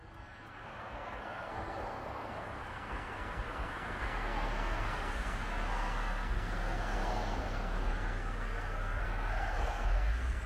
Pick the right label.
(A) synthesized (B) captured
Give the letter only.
A